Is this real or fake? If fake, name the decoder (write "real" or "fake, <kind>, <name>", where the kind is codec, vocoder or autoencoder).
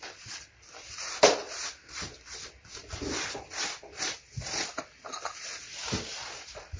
real